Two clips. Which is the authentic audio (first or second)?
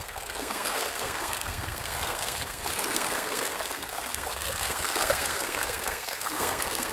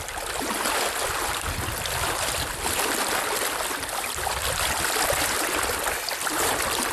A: second